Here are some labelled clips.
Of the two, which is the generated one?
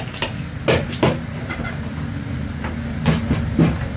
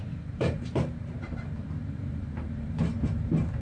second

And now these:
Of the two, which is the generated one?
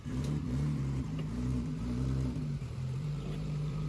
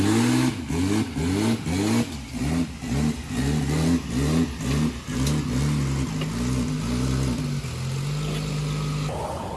first